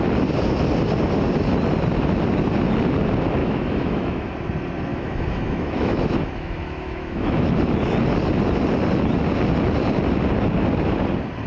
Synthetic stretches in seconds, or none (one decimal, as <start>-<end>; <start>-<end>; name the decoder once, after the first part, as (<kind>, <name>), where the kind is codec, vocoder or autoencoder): 3.4-4.3 (autoencoder, DAC-VAE); 4.9-7.6